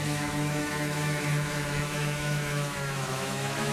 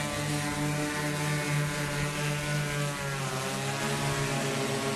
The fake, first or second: first